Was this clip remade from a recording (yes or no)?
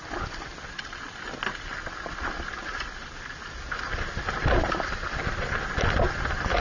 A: no